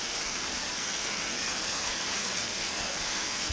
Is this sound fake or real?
fake